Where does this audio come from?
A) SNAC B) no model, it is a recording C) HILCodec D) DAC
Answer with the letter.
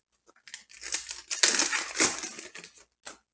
B